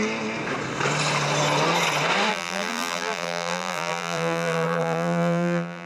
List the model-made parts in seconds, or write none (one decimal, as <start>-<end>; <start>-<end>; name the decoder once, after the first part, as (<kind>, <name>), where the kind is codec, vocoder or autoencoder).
2.3-5.9 (vocoder, BigVGAN v2)

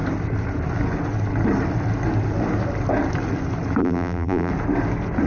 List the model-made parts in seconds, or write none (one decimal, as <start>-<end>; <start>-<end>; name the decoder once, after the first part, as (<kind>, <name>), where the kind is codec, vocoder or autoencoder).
3.8-4.5 (vocoder, BigVGAN v2)

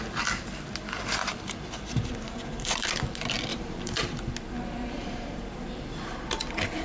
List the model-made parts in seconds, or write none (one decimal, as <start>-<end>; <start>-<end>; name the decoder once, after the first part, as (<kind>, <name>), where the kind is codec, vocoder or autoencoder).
1.2-1.9 (vocoder, BigVGAN v2); 3.5-4.3; 5.0-5.5